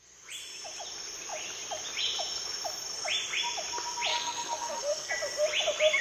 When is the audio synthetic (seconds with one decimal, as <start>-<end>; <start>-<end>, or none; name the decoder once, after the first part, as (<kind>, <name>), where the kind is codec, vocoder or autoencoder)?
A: 4.1-5.1 (codec, SNAC)